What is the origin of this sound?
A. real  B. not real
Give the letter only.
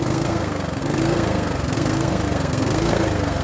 B